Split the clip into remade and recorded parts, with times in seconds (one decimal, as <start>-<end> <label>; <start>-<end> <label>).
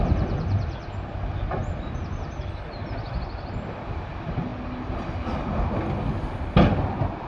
0.0-7.3 recorded